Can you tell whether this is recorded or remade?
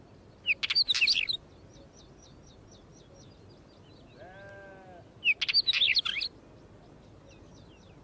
recorded